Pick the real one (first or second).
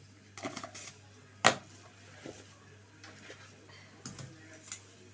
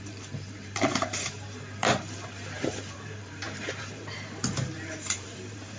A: first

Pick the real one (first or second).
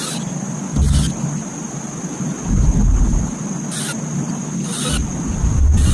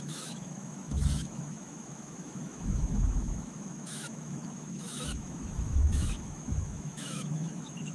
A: first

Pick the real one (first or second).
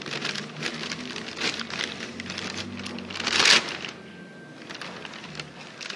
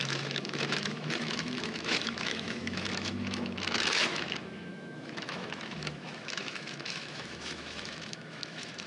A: first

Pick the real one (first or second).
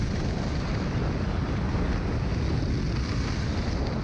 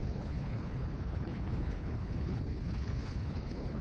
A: first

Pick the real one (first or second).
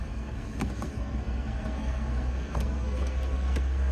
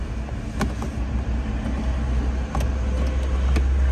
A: second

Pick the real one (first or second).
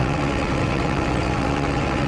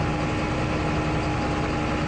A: second